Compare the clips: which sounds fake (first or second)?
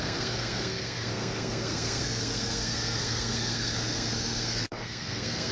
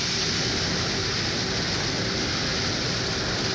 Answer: first